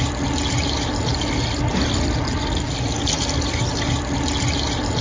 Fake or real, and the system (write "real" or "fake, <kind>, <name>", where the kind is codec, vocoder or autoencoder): real